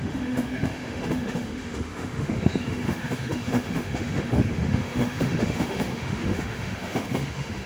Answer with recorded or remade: remade